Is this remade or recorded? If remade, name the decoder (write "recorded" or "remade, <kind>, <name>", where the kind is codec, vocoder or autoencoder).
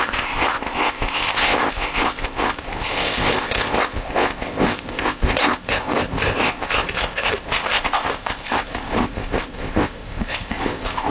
remade, codec, ZipCodec